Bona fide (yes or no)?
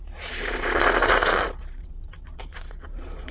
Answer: no